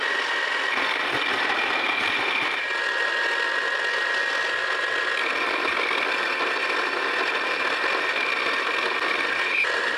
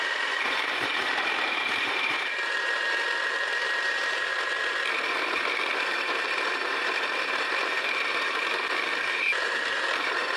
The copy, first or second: second